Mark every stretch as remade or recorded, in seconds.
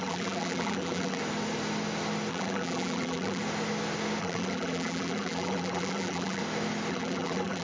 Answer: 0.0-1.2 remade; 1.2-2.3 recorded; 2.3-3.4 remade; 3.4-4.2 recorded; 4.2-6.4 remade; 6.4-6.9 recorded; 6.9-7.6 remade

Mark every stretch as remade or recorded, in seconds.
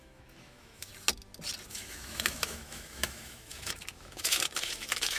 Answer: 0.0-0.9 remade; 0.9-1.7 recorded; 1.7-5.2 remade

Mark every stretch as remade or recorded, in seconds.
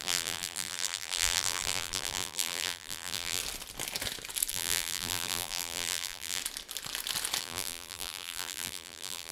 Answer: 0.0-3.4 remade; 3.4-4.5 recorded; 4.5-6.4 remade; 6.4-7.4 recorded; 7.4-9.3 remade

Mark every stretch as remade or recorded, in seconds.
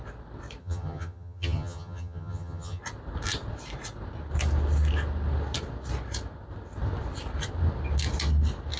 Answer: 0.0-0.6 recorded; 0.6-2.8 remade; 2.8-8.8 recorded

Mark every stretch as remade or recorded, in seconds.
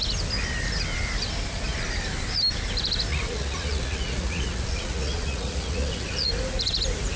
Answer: 0.0-3.1 recorded; 3.1-6.3 remade; 6.3-7.2 recorded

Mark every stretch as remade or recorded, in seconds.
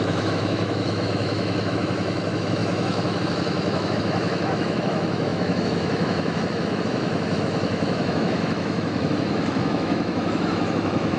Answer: 0.0-11.2 remade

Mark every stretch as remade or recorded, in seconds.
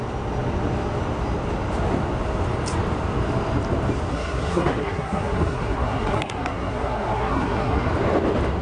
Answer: 0.0-4.1 recorded; 4.1-7.9 remade; 7.9-8.6 recorded